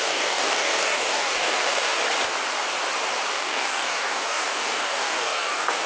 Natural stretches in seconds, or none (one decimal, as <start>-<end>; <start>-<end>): 2.0-3.3

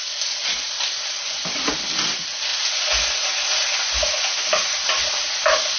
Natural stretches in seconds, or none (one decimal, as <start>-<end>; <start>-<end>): 0.0-0.4; 1.1-5.8

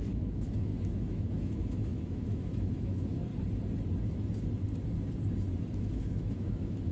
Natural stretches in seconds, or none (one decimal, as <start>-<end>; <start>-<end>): 3.3-5.7

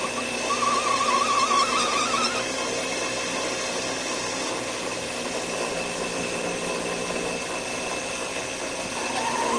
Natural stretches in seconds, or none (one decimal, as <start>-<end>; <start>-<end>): 0.0-9.6